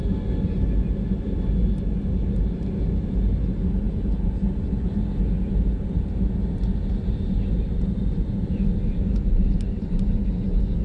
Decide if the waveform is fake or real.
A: real